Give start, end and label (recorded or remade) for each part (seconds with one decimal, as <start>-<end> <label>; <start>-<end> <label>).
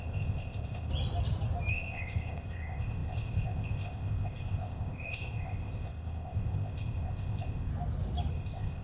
0.0-0.9 remade; 0.9-1.7 recorded; 1.7-7.7 remade; 7.7-8.3 recorded; 8.3-8.8 remade